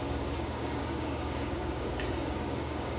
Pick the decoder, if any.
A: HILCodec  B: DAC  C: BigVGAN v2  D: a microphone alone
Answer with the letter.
B